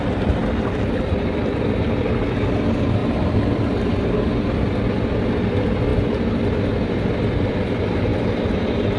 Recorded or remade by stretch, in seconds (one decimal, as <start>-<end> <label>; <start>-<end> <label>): 0.0-0.4 recorded; 0.4-1.8 remade; 1.8-3.0 recorded; 3.0-3.6 remade; 3.6-5.9 recorded; 5.9-7.5 remade; 7.5-9.0 recorded